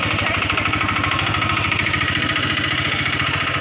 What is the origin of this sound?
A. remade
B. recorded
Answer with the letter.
A